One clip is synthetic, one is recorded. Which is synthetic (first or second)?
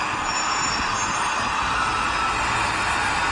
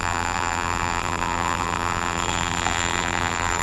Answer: second